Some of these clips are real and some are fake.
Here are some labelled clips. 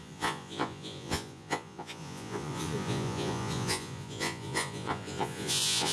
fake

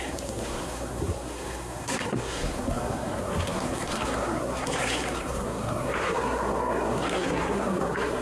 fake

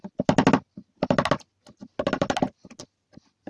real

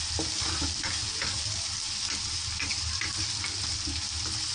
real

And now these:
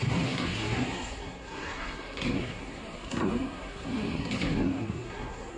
fake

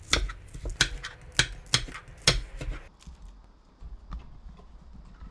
real